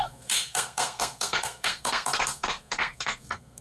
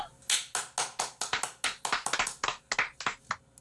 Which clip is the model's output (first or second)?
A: first